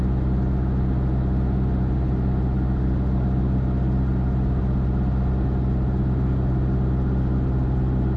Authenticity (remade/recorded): recorded